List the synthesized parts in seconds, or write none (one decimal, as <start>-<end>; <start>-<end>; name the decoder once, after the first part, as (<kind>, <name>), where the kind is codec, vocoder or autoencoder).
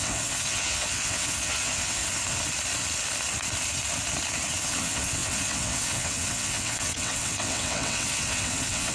0.0-2.0 (vocoder, WaveNeXt); 4.6-8.9